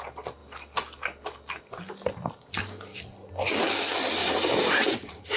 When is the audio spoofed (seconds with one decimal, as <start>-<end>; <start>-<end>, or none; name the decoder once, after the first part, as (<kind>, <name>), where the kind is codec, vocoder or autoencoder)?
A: 4.2-5.4 (vocoder, BigVGAN v2)